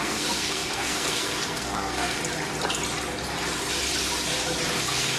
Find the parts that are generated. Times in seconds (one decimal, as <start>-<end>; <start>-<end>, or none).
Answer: 0.0-2.2; 4.8-5.2